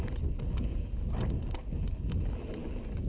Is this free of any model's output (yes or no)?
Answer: yes